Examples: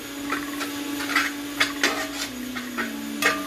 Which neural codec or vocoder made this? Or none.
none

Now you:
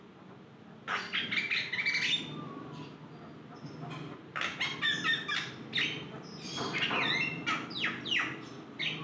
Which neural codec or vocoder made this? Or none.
none